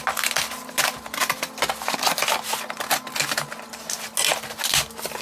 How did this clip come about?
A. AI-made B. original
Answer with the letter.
B